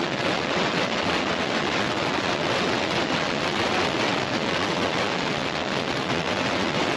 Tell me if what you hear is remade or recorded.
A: remade